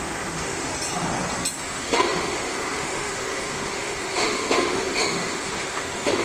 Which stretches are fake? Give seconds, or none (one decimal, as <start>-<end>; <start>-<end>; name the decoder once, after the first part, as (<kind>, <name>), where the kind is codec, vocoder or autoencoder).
0.0-0.7 (autoencoder, DAC-VAE); 1.6-6.2